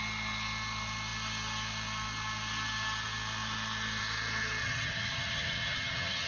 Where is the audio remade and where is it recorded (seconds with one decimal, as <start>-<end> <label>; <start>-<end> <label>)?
0.0-4.6 recorded; 4.6-6.3 remade